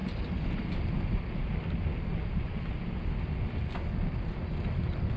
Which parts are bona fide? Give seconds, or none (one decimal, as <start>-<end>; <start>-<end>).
1.1-2.1; 4.2-5.2